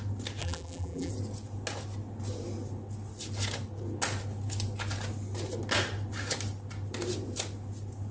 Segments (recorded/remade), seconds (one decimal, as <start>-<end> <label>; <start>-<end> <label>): 0.0-0.4 recorded; 0.4-1.1 remade; 1.1-8.1 recorded